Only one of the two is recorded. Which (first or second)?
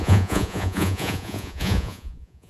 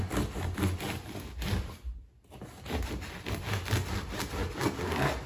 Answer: second